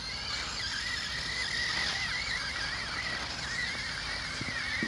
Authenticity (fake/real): real